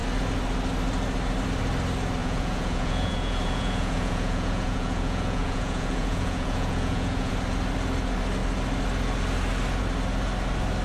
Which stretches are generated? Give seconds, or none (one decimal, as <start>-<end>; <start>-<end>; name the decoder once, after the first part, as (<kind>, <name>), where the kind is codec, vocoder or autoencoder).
2.2-7.3 (vocoder, Vocos)